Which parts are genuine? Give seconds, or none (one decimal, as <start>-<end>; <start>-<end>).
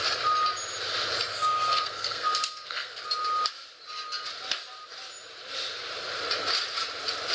0.0-1.3; 3.0-7.3